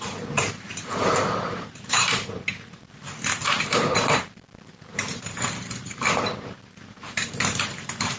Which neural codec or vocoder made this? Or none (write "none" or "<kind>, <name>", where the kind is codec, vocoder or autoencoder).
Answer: vocoder, BigVGAN v2